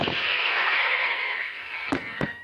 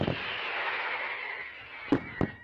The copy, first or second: first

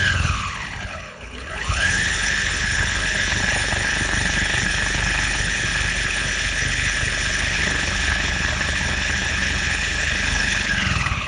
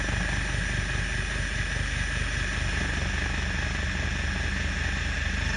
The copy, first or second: first